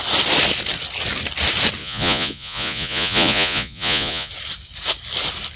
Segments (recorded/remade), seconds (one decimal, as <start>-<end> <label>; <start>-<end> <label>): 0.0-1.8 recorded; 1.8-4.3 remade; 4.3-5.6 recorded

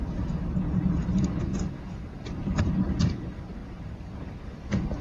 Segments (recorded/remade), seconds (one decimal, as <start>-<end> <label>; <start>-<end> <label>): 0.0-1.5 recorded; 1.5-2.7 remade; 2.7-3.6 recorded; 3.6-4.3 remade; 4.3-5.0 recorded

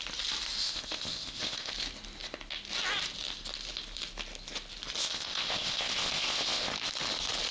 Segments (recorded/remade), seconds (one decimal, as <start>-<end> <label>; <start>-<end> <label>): 0.0-0.6 recorded; 0.6-1.7 remade; 1.7-5.0 recorded; 5.0-6.7 remade; 6.7-7.5 recorded